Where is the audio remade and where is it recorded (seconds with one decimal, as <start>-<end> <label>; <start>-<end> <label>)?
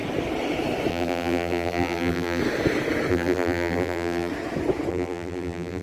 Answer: 0.0-0.9 recorded; 0.9-2.4 remade; 2.4-3.1 recorded; 3.1-4.3 remade; 4.3-4.9 recorded; 4.9-5.8 remade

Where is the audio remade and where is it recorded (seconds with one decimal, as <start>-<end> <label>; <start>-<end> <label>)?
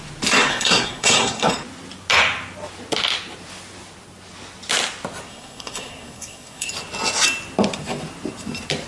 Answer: 0.0-0.5 recorded; 0.5-1.5 remade; 1.5-5.3 recorded; 5.3-6.7 remade; 6.7-8.9 recorded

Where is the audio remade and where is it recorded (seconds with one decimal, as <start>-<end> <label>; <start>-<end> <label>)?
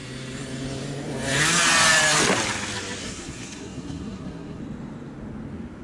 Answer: 0.0-3.0 recorded; 3.0-4.6 remade; 4.6-5.8 recorded